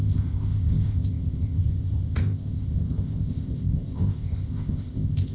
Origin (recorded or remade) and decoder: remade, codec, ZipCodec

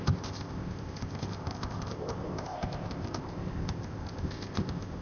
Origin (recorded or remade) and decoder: remade, codec, ZipCodec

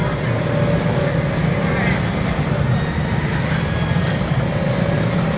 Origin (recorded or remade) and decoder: recorded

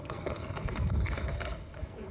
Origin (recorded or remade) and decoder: remade, codec, SNAC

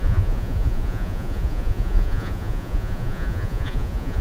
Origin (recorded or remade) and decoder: remade, vocoder, Vocos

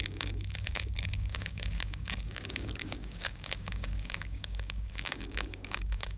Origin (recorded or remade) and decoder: remade, codec, DAC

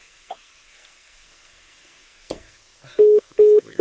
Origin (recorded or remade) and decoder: remade, codec, SNAC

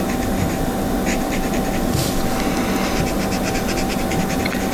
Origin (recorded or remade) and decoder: recorded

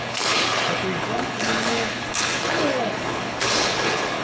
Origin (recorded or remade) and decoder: remade, codec, HILCodec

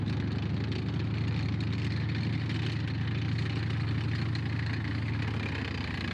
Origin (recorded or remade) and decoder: recorded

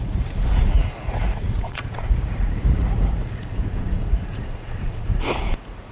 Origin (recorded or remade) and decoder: remade, vocoder, Vocos